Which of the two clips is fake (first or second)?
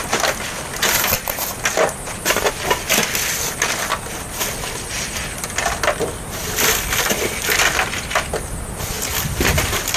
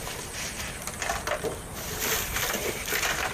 second